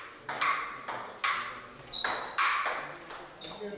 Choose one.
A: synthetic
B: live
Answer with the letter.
B